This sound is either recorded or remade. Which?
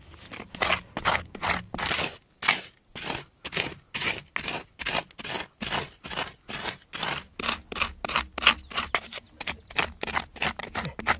recorded